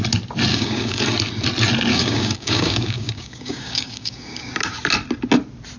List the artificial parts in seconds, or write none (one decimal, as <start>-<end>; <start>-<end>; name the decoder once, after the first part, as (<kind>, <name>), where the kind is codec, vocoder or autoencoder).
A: 0.5-1.0 (codec, DAC); 1.9-4.5